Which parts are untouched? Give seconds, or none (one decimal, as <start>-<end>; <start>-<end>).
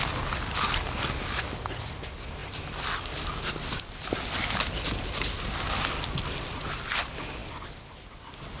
0.0-8.6